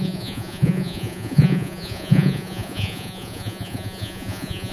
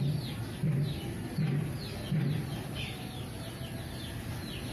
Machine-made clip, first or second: first